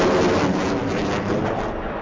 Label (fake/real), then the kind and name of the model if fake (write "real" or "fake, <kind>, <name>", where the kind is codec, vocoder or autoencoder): real